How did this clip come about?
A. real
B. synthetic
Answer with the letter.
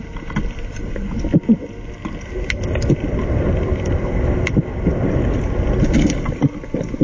A